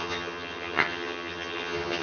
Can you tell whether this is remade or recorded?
remade